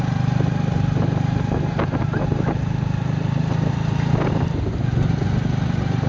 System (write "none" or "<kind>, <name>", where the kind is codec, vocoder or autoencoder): none